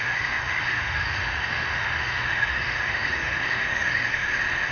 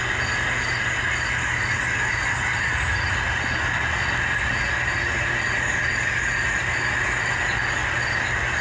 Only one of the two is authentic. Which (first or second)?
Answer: second